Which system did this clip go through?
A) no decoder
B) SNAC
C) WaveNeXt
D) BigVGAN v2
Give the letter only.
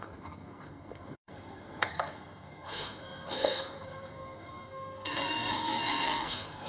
B